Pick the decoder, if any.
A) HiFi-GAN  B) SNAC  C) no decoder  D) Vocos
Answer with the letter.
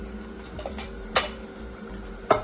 C